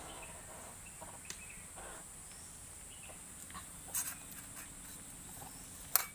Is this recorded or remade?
recorded